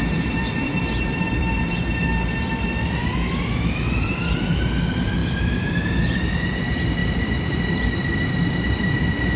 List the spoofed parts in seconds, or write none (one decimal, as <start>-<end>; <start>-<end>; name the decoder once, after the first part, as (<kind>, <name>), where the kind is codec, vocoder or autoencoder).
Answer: 0.0-1.6 (vocoder, BigVGAN v2); 5.2-5.7; 7.0-8.8